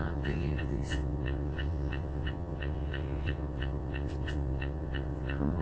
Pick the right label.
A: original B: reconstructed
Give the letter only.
B